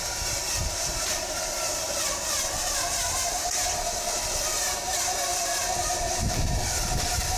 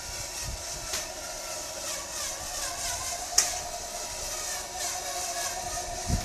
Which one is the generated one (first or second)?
first